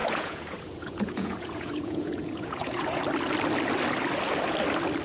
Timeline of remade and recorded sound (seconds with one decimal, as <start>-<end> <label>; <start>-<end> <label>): 0.0-3.0 remade; 3.0-5.0 recorded